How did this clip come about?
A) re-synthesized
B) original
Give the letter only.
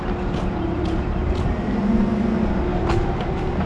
B